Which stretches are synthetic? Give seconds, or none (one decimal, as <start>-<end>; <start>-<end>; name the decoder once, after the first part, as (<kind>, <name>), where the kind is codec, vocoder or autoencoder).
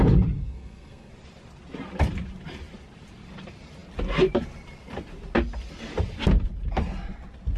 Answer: 0.4-1.1 (codec, SNAC)